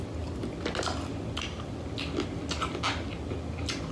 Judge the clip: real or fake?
real